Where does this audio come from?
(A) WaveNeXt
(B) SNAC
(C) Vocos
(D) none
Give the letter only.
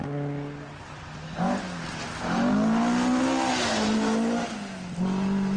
D